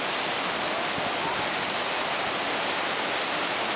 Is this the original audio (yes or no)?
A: yes